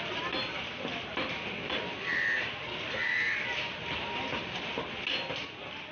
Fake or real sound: real